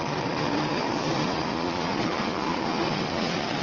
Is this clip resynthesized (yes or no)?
yes